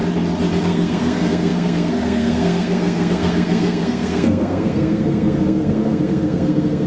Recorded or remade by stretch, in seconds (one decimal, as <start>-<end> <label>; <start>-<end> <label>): 0.0-0.6 recorded; 0.6-6.9 remade